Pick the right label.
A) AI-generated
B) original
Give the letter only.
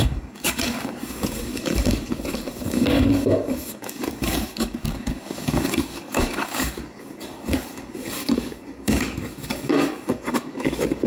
A